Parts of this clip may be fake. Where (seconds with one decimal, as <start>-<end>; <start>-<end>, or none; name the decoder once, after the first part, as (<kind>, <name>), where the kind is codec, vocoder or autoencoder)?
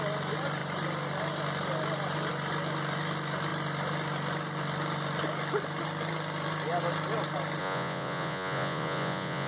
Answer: 7.6-9.5 (vocoder, Vocos)